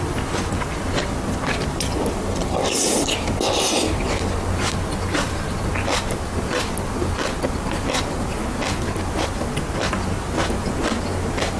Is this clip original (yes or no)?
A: yes